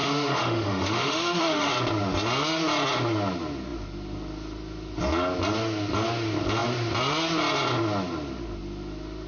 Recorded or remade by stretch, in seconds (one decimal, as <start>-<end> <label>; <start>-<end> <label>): 0.0-1.7 remade; 1.7-9.3 recorded